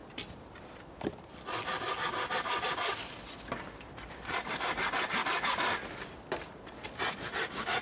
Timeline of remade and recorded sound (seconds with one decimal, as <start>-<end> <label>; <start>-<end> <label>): 0.0-1.3 remade; 1.3-5.2 recorded; 5.2-6.6 remade; 6.6-7.8 recorded